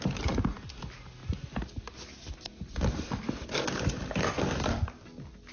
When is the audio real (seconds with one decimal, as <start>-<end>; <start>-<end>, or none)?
0.0-5.5